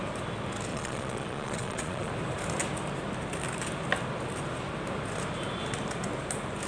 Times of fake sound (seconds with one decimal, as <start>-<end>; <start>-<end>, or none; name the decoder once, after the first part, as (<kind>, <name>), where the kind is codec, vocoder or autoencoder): 0.7-2.1 (vocoder, Vocos)